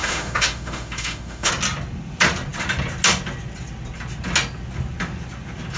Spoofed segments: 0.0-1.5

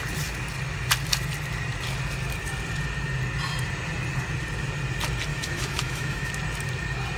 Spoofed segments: 5.3-6.3

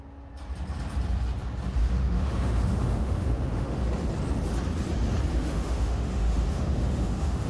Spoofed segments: 1.8-3.8; 5.3-7.5

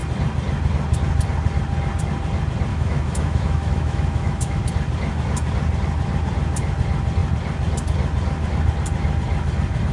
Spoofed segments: 2.7-4.6

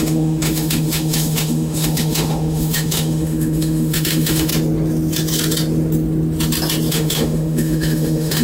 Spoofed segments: 0.0-4.5; 6.9-8.4

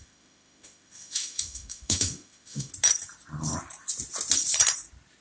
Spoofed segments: 0.0-2.7

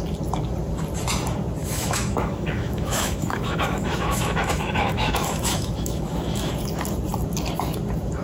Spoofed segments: 1.6-6.5

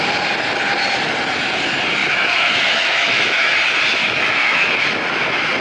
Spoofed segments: 2.0-3.5; 4.0-4.7